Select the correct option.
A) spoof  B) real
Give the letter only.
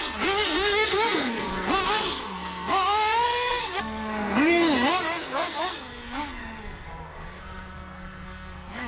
A